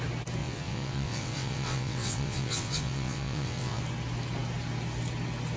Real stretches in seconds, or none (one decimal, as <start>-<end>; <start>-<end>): 0.0-0.4; 3.8-5.6